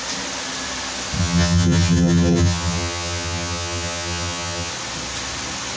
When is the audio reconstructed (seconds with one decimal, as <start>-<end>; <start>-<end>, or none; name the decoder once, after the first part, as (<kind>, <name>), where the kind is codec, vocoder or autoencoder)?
1.2-4.7 (vocoder, HiFi-GAN)